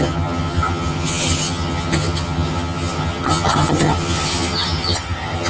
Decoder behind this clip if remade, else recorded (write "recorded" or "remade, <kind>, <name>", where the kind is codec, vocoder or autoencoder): remade, vocoder, HiFi-GAN